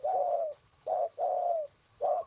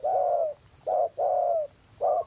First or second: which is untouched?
second